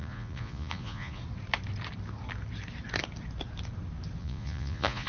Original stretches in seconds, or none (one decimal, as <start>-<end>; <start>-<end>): 1.2-4.2